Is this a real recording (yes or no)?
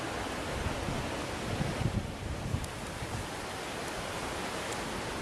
yes